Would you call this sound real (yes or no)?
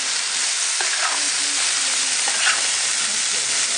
yes